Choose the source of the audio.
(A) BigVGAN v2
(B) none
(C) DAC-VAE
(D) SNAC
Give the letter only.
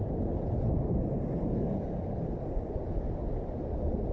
B